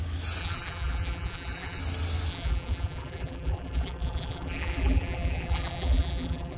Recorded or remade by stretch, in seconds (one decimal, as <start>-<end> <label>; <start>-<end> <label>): 0.0-0.4 recorded; 0.4-1.8 remade; 1.8-2.3 recorded; 2.3-6.6 remade

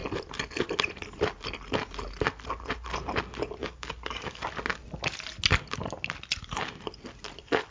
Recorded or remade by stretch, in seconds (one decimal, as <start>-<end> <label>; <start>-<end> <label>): 0.0-3.6 recorded; 3.6-4.4 remade; 4.4-7.7 recorded

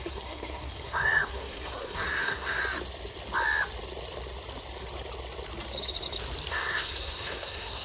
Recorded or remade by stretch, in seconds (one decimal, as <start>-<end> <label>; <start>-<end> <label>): 0.0-2.6 remade; 2.6-6.5 recorded; 6.5-7.8 remade